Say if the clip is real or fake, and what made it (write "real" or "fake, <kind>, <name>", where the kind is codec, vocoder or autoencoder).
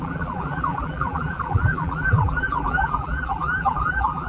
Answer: fake, vocoder, BigVGAN v2